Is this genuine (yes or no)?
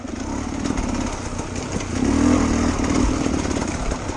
yes